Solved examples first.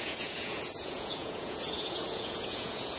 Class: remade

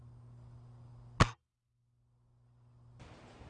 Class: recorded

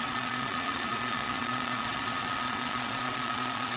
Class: remade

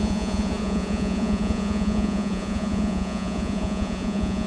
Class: remade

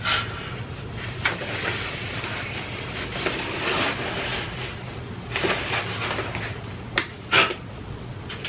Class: recorded